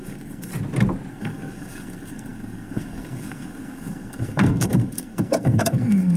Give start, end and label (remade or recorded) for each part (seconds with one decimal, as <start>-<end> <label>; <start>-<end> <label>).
0.0-0.5 remade; 0.5-1.1 recorded; 1.1-6.2 remade